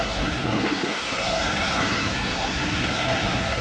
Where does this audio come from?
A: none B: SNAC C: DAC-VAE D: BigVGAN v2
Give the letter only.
B